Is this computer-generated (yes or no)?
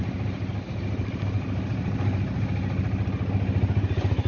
no